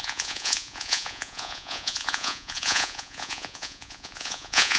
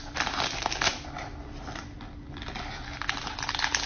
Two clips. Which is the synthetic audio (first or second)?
first